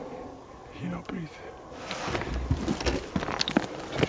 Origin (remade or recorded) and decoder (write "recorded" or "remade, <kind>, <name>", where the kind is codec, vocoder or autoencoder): recorded